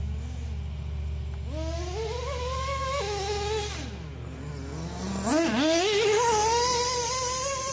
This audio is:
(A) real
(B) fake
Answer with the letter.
A